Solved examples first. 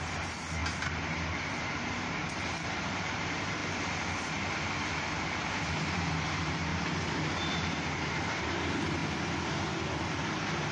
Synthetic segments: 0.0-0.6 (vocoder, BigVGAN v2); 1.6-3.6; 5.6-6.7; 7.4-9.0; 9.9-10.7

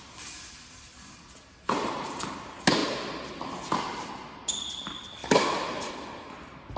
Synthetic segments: none

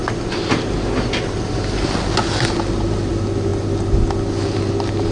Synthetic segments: none

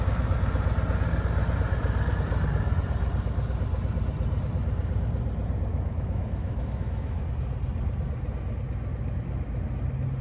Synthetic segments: 5.7-7.2 (autoencoder, DAC-VAE)

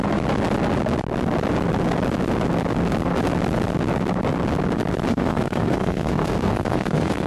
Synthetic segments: 5.1-7.3 (codec, SNAC)

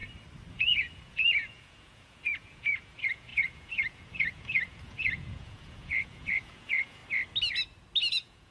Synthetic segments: 0.5-7.0 (vocoder, Vocos); 8.1-8.5

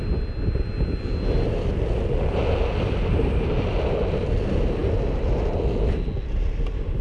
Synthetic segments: none